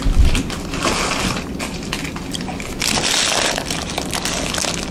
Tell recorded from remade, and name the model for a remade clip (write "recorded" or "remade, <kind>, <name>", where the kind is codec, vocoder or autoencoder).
recorded